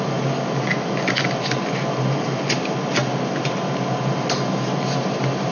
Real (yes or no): yes